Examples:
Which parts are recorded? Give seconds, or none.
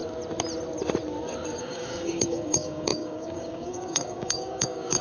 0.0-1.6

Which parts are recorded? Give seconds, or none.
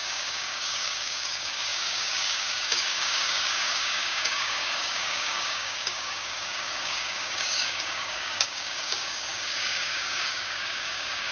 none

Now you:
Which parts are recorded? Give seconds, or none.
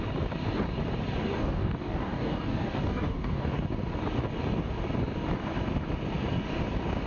0.0-1.2; 3.6-7.1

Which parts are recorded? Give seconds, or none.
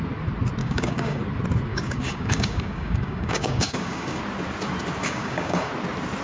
0.0-0.6; 1.2-1.7; 4.2-5.0; 5.7-6.2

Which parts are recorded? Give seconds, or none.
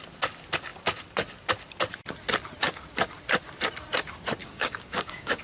0.0-4.4